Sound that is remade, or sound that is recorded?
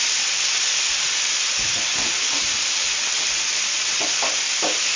recorded